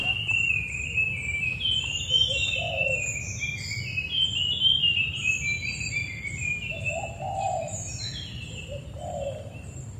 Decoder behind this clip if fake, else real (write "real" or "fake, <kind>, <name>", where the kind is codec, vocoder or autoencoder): fake, vocoder, BigVGAN v2